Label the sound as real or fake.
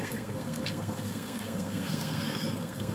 fake